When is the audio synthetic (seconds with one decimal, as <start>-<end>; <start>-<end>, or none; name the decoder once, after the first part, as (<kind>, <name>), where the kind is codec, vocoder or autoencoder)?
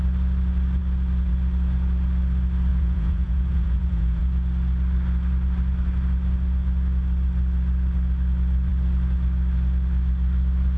2.7-4.2 (vocoder, Vocos)